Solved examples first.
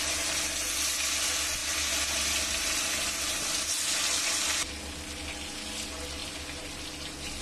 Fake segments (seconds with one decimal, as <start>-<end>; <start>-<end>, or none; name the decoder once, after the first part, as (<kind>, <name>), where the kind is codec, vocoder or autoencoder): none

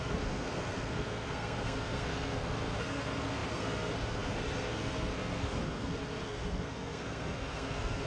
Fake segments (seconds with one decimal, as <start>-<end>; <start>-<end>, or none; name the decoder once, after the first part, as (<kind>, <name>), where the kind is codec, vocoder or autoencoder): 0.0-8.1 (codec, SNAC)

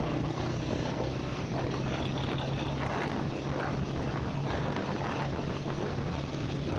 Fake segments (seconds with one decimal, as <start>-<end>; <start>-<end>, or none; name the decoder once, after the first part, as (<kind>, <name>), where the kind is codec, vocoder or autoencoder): 0.0-1.5 (codec, SNAC); 4.2-4.8; 5.5-6.8

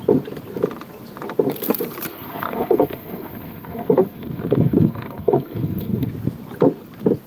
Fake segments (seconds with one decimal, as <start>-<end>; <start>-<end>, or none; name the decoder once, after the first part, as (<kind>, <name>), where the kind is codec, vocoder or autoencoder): 2.1-6.1 (codec, SNAC)

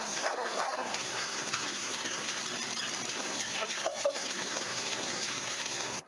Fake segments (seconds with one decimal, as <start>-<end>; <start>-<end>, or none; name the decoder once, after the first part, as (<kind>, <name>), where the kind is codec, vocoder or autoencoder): 0.0-2.4 (codec, SNAC); 3.1-6.1

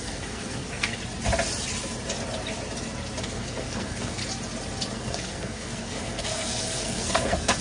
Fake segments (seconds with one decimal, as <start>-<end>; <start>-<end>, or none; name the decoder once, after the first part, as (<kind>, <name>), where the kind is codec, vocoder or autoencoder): 0.0-1.0 (codec, SNAC); 3.2-4.2; 4.9-7.6

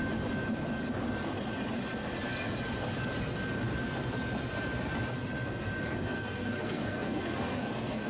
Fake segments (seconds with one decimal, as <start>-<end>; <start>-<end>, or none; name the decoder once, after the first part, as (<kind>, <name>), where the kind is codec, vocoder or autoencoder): 5.9-8.1 (codec, SNAC)